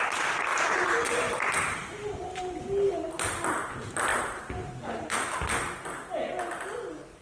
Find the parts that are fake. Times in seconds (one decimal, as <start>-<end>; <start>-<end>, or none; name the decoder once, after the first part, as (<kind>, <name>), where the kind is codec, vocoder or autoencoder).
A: 0.5-2.9 (vocoder, BigVGAN v2); 4.1-4.8